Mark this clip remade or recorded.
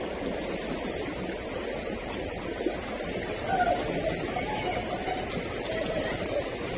recorded